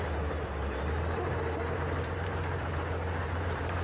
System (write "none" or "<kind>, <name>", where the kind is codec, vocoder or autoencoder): vocoder, BigVGAN v2